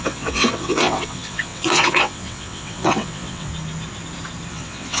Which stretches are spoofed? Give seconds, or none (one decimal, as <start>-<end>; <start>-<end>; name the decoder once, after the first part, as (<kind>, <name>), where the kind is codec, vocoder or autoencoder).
0.0-3.5 (vocoder, WaveNeXt); 4.5-5.0

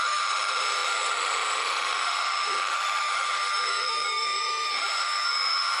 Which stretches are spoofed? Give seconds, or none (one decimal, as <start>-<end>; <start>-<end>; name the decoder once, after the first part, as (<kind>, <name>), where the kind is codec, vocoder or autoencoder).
0.0-5.8 (autoencoder, DAC-VAE)

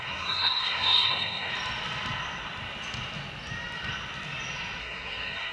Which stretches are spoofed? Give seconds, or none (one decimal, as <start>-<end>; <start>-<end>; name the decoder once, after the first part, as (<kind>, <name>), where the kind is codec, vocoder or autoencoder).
0.0-1.5 (codec, SNAC); 4.8-5.5

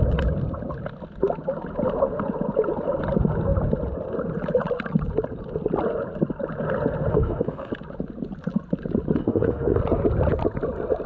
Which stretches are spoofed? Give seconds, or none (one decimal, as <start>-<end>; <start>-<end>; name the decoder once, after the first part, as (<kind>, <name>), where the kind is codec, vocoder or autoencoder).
7.1-7.7 (autoencoder, DAC-VAE); 9.2-9.8

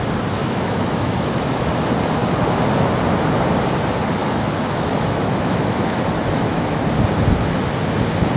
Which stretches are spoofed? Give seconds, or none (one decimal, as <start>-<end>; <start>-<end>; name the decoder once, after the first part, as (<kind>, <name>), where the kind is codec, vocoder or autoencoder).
0.4-1.7 (autoencoder, DAC-VAE); 4.2-6.7

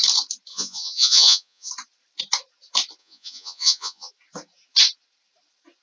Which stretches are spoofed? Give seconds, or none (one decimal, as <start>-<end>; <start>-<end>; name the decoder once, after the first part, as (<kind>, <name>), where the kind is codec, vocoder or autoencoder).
0.5-1.7 (vocoder, Vocos); 3.0-4.1

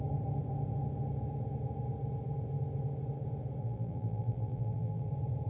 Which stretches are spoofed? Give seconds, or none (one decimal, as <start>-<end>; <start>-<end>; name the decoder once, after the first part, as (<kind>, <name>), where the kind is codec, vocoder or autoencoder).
3.6-5.1 (vocoder, BigVGAN v2)